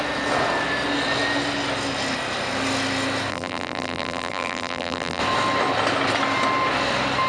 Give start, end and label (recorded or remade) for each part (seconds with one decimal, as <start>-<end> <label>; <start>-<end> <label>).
0.0-3.3 recorded; 3.3-5.2 remade; 5.2-7.3 recorded